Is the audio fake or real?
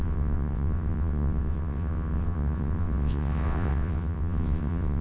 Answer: fake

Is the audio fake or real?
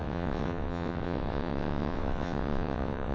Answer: fake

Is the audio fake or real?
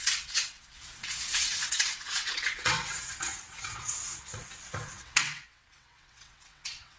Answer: fake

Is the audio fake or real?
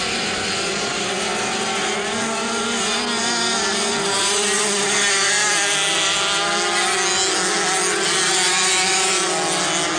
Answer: real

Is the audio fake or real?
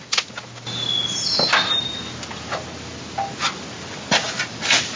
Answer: real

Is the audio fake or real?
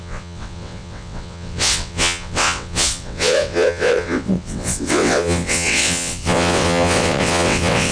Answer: fake